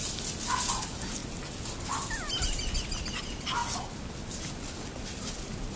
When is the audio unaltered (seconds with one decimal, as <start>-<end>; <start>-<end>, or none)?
0.0-5.8